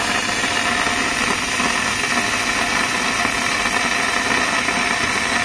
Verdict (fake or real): real